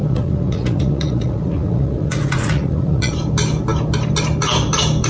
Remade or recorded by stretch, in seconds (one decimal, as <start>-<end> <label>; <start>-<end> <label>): 0.0-3.1 remade; 3.1-5.1 recorded